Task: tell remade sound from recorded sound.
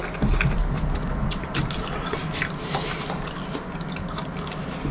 recorded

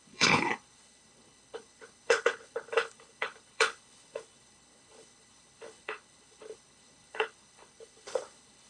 remade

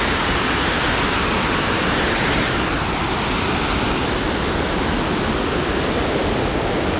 recorded